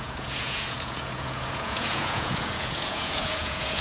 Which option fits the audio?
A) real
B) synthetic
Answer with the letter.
B